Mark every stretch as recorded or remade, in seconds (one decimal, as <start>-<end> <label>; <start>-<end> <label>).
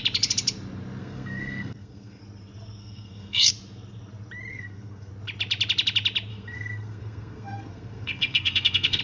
0.0-1.0 recorded; 1.0-2.2 remade; 2.2-2.8 recorded; 2.8-3.5 remade; 3.5-4.5 recorded; 4.5-5.1 remade; 5.1-6.3 recorded; 6.3-9.0 remade